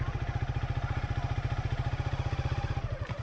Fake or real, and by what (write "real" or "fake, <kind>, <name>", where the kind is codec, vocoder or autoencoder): real